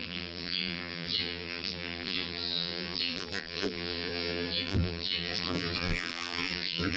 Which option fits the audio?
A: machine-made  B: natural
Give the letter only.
A